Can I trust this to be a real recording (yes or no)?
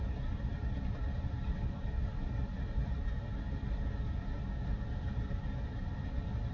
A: yes